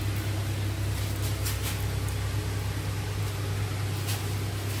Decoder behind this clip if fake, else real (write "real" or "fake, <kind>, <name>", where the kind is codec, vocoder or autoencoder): real